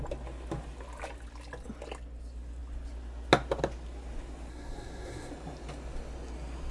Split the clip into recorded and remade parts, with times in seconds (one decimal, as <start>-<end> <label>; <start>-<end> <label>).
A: 0.0-4.5 recorded; 4.5-5.3 remade; 5.3-6.7 recorded